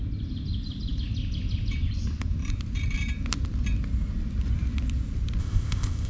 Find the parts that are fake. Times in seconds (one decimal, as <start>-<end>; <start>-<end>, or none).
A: 5.4-6.1